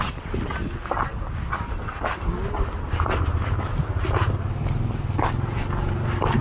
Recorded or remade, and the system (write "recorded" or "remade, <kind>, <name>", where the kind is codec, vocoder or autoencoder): recorded